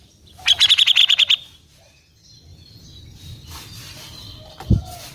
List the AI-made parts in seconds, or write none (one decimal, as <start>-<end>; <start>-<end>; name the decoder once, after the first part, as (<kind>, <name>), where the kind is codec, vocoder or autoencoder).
2.5-5.1 (vocoder, BigVGAN v2)

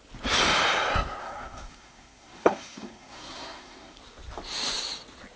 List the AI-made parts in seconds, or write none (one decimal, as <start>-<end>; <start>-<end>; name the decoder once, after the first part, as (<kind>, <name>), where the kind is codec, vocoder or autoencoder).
1.2-4.0 (codec, SNAC)